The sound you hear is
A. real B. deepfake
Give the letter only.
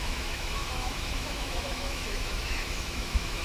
B